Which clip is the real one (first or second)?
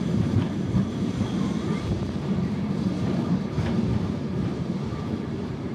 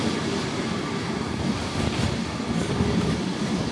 second